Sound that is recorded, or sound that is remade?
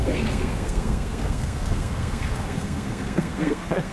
remade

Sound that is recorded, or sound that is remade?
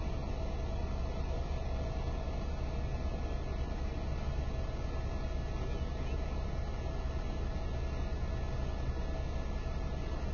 recorded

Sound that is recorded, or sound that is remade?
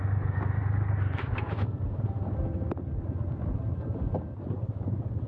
recorded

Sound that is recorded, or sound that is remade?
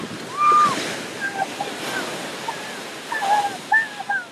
recorded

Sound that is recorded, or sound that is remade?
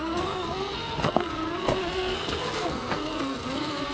remade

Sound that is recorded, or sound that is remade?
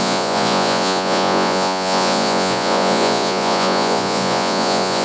remade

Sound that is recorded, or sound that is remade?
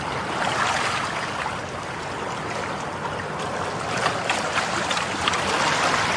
recorded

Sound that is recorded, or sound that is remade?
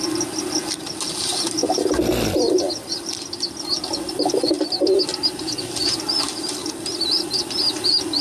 recorded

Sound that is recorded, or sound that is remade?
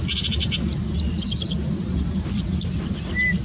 recorded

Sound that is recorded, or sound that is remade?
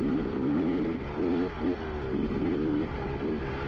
recorded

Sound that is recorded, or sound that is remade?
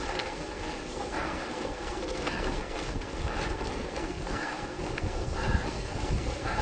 remade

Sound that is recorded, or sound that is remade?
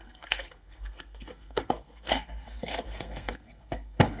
remade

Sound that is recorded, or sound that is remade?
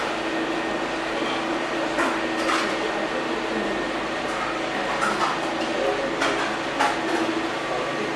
recorded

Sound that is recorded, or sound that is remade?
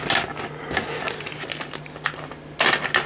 recorded